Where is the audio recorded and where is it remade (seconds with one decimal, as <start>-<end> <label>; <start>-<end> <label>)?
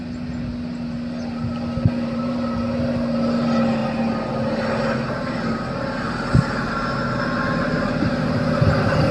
0.0-9.1 recorded